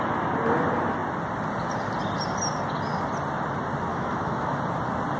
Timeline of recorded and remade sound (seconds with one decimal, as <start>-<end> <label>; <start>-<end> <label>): 0.0-3.9 recorded; 3.9-4.6 remade; 4.6-5.2 recorded